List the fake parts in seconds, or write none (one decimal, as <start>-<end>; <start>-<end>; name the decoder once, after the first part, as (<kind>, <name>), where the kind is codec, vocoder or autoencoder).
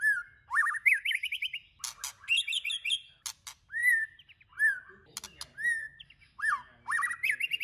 0.6-1.6 (autoencoder, DAC-VAE)